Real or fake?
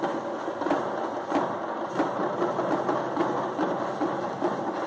real